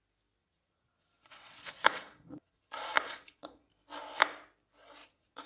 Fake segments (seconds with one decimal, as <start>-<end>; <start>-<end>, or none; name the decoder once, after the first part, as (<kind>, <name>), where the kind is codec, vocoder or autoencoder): 0.4-3.7 (vocoder, Vocos); 5.0-5.5